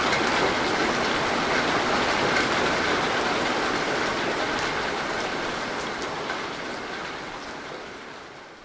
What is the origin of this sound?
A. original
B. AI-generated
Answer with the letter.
A